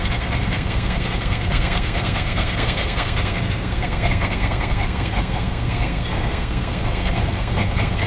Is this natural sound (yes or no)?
no